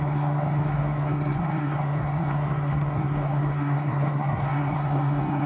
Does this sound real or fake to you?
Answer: fake